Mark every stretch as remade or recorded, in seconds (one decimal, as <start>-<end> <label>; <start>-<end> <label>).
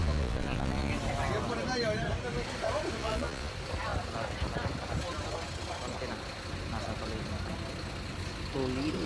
0.0-0.9 remade; 0.9-3.0 recorded; 3.0-3.5 remade; 3.5-9.1 recorded